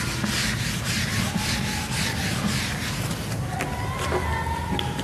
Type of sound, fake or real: real